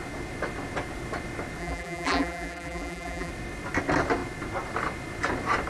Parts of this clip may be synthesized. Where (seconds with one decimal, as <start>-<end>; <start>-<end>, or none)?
1.6-3.3